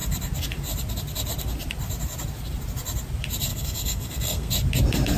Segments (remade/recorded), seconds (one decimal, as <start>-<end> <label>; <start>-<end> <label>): 0.0-3.5 recorded; 3.5-4.5 remade; 4.5-5.2 recorded